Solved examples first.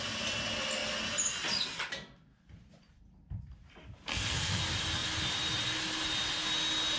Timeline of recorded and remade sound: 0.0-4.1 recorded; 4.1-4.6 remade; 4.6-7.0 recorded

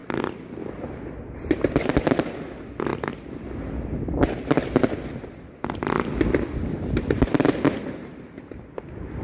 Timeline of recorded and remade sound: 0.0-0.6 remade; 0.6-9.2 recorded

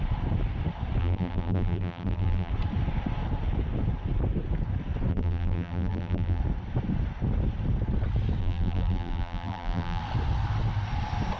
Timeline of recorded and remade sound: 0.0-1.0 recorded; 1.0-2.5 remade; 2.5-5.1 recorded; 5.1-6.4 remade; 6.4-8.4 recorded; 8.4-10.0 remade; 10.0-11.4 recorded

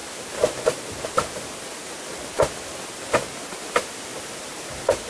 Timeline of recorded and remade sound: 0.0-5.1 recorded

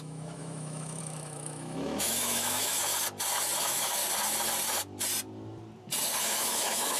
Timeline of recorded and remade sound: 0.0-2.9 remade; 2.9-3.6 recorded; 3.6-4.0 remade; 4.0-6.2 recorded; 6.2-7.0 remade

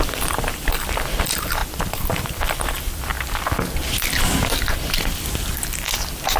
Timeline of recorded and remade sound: 0.0-1.6 remade; 1.6-2.1 recorded; 2.1-3.1 remade; 3.1-3.8 recorded; 3.8-6.4 remade